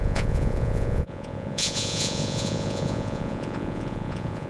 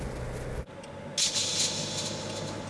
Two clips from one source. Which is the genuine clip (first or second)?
second